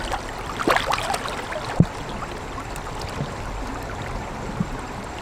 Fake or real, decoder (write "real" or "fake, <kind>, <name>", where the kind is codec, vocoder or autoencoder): real